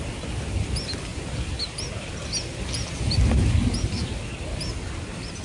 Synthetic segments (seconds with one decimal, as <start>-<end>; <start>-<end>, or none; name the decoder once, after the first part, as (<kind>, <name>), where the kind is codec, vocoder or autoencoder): none